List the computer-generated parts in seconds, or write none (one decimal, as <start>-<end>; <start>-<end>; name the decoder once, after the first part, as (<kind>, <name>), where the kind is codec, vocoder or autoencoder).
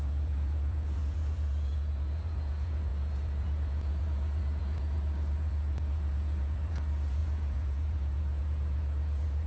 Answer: 0.0-9.5 (vocoder, Vocos)